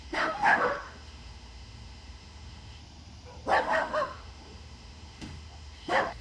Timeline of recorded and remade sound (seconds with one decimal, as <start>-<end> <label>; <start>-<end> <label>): 0.0-2.8 remade; 2.8-3.6 recorded; 3.6-6.2 remade